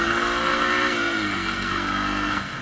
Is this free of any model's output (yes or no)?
no